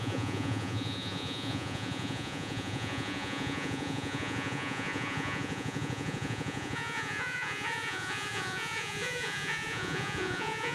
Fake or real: fake